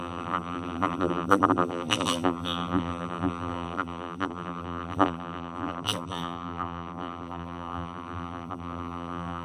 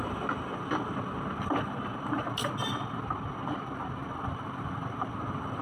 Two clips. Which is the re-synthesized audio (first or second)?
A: first